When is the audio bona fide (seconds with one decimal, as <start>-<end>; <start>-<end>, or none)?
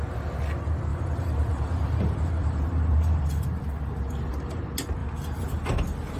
0.0-0.9; 4.6-5.0